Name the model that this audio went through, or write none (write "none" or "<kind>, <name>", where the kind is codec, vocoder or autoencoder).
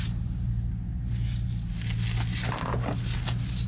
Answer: none